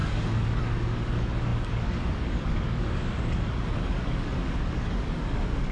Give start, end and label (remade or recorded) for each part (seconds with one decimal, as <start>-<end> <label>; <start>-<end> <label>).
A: 0.0-5.7 remade